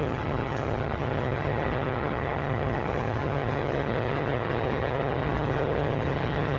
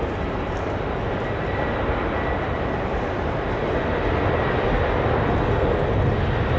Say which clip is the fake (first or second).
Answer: first